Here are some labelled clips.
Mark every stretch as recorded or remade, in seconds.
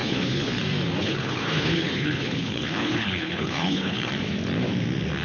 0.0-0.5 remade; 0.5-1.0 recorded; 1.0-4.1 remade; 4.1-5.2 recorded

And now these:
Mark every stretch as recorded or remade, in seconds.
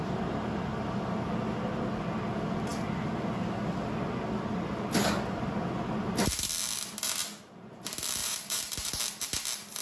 0.0-8.2 recorded; 8.2-9.0 remade; 9.0-9.8 recorded